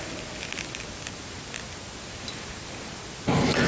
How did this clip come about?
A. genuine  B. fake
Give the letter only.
A